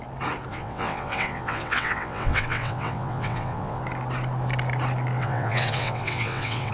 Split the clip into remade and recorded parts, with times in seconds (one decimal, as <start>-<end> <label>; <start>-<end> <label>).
0.0-0.5 recorded; 0.5-3.8 remade; 3.8-5.2 recorded; 5.2-6.7 remade